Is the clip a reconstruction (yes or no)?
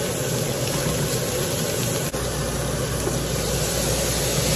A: no